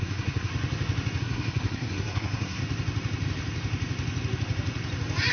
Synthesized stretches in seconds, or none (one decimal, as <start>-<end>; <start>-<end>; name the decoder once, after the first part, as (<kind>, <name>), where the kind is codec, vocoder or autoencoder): 0.0-0.5 (codec, SNAC); 1.2-2.6